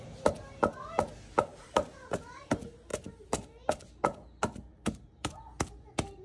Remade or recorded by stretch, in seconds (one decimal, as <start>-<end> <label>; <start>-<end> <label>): 0.0-1.5 recorded; 1.5-2.4 remade; 2.4-4.7 recorded; 4.7-5.4 remade; 5.4-6.2 recorded